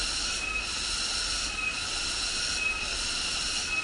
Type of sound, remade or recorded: recorded